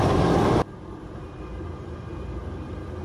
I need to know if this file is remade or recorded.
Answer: remade